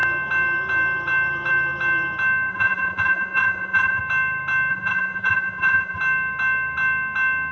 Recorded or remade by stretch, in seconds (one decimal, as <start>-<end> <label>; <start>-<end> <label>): 0.0-2.5 recorded; 2.5-4.0 remade; 4.0-4.7 recorded; 4.7-6.0 remade; 6.0-7.5 recorded